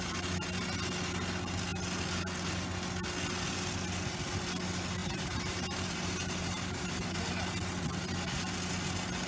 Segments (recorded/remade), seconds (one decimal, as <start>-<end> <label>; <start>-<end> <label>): 0.0-5.0 recorded; 5.0-7.2 remade; 7.2-9.3 recorded